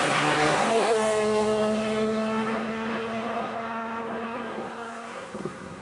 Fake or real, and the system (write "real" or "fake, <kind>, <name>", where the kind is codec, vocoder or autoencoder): fake, codec, SNAC